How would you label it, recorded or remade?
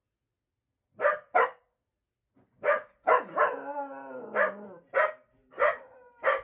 recorded